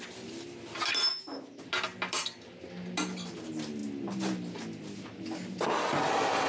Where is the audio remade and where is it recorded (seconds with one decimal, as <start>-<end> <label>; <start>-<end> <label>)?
0.0-1.1 recorded; 1.1-1.6 remade; 1.6-6.5 recorded